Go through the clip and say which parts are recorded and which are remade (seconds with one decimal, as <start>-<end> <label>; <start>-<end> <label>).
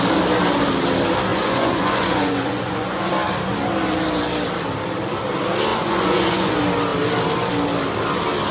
0.0-1.3 recorded; 1.3-3.1 remade; 3.1-5.7 recorded; 5.7-6.5 remade; 6.5-8.5 recorded